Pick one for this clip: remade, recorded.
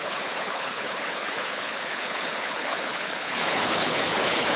remade